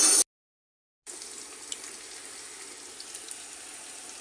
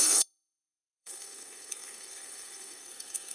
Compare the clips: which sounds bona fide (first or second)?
first